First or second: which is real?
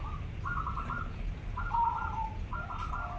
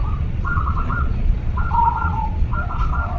first